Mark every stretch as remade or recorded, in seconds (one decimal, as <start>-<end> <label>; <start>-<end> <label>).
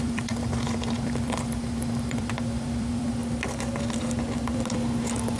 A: 0.0-3.2 remade; 3.2-5.4 recorded